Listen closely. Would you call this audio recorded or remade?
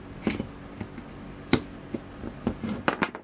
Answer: recorded